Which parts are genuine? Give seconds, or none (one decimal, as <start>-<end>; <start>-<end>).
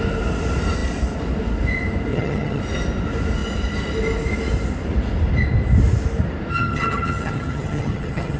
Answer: 0.0-2.1; 2.6-6.5